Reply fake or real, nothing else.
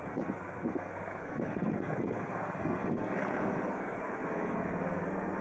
fake